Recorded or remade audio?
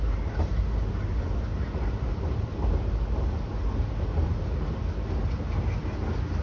recorded